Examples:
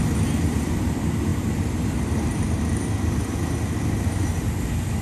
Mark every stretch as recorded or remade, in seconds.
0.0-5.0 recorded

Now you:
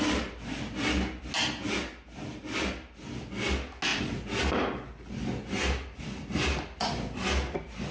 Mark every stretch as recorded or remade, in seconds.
0.0-7.9 recorded

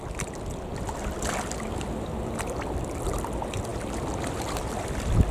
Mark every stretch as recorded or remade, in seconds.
0.0-5.3 recorded

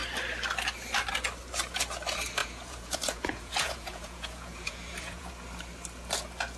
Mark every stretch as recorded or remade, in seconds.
0.0-2.4 recorded; 2.4-5.3 remade; 5.3-6.6 recorded